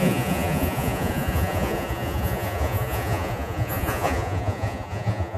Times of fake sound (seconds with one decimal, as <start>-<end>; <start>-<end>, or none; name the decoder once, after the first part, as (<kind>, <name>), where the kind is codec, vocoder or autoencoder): 0.0-5.4 (vocoder, Vocos)